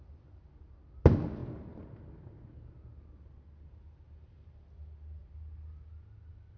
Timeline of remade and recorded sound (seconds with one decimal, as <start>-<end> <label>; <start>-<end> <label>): 0.0-6.6 recorded